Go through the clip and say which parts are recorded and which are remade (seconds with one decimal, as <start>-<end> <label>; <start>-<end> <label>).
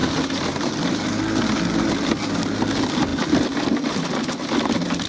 0.0-2.3 remade; 2.3-3.1 recorded; 3.1-5.1 remade